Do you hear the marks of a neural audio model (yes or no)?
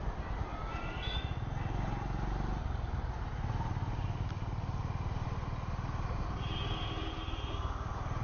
no